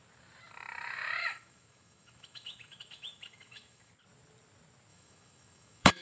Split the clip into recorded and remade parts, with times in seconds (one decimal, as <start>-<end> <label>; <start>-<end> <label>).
0.0-1.2 recorded; 1.2-3.9 remade; 3.9-4.9 recorded; 4.9-6.0 remade